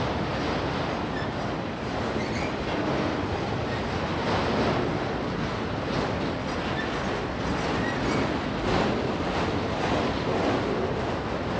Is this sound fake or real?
real